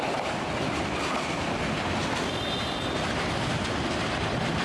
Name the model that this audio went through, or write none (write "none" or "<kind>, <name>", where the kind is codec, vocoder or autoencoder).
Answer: none